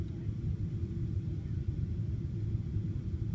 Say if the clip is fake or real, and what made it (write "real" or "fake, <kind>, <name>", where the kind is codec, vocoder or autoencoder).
real